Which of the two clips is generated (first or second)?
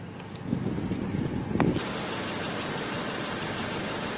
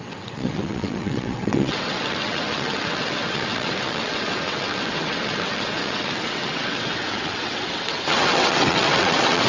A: second